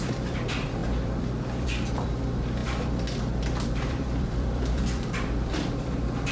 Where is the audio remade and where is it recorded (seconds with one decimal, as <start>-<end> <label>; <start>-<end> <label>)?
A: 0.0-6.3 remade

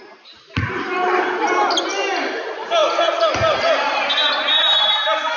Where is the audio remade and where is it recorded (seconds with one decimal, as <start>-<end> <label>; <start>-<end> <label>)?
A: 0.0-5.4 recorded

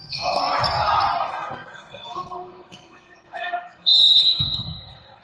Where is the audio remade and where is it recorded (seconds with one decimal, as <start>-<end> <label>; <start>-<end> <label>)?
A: 0.0-0.4 remade; 0.4-1.2 recorded; 1.2-5.2 remade

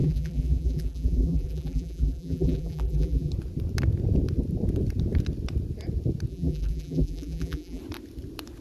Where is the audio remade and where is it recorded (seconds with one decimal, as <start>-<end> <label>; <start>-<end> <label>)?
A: 0.0-3.3 remade; 3.3-6.3 recorded; 6.3-7.8 remade; 7.8-8.6 recorded